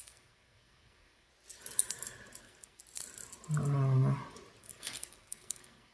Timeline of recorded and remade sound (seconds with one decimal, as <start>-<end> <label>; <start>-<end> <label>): 0.0-1.3 remade; 1.3-2.4 recorded; 2.4-2.8 remade; 2.8-4.6 recorded; 4.6-5.9 remade